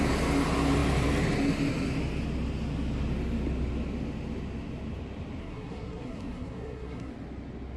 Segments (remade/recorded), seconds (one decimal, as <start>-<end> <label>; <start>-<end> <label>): 0.0-5.4 recorded; 5.4-7.1 remade; 7.1-7.8 recorded